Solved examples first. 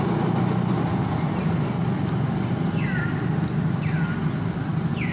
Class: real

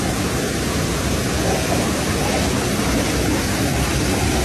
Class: real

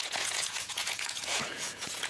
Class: fake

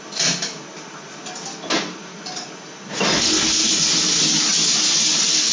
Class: real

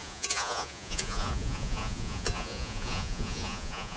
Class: fake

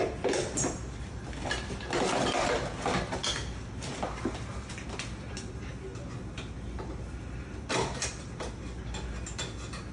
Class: real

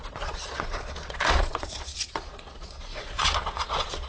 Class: fake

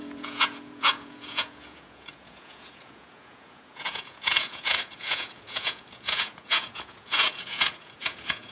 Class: fake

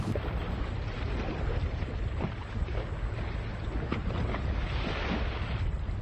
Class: real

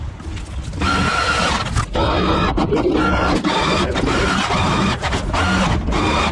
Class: real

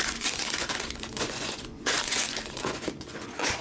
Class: fake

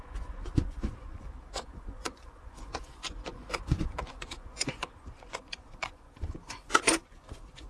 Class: fake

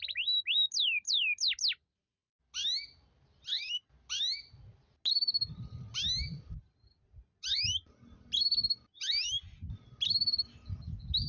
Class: real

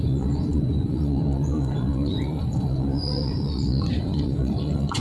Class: fake